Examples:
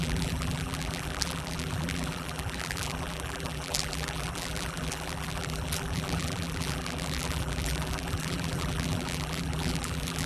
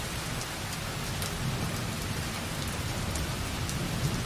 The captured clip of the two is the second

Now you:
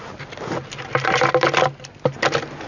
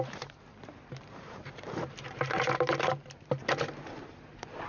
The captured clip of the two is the first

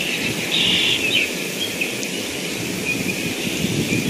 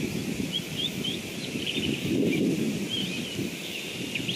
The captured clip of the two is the first